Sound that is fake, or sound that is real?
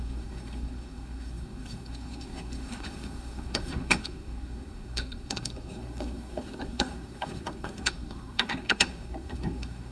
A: fake